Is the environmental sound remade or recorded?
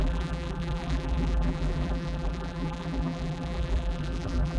remade